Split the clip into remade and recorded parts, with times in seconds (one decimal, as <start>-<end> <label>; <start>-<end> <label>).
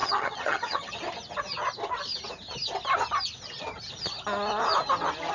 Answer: 0.0-0.9 remade; 0.9-5.3 recorded